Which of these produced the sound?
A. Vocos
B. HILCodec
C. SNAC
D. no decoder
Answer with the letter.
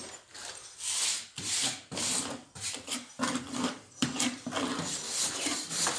D